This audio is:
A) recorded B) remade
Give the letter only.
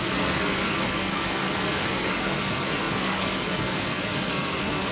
B